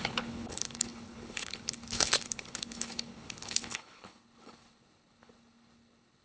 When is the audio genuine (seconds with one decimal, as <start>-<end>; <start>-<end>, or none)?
none